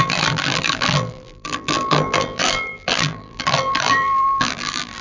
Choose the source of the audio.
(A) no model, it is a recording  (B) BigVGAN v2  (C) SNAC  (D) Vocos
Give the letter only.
B